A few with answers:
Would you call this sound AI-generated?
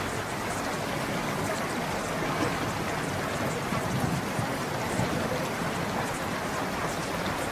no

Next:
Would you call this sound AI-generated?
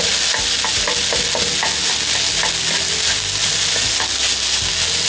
no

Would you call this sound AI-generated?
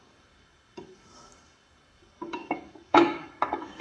yes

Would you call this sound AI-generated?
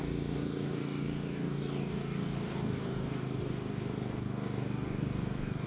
yes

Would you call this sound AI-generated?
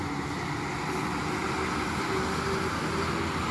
no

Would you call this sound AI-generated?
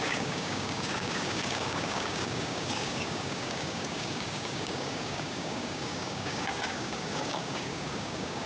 yes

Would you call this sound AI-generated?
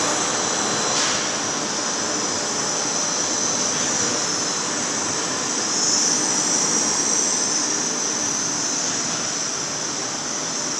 no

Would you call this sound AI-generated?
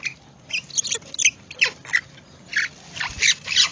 no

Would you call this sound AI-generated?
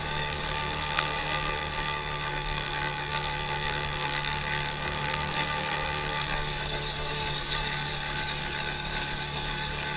yes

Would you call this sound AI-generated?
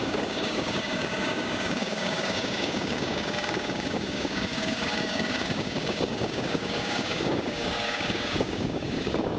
yes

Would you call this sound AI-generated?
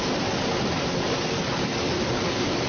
no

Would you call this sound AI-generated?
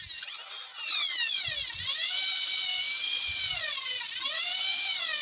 no